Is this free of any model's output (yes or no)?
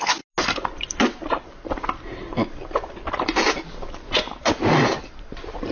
yes